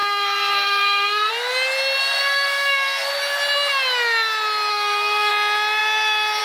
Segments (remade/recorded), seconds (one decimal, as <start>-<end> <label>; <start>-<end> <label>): 0.0-1.3 remade; 1.3-2.0 recorded; 2.0-3.1 remade; 3.1-4.7 recorded; 4.7-5.3 remade; 5.3-6.4 recorded